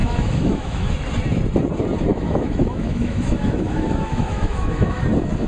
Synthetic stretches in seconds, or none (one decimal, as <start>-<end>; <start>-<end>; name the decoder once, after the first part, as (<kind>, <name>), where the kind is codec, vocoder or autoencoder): 0.0-0.9 (autoencoder, DAC-VAE); 2.1-5.0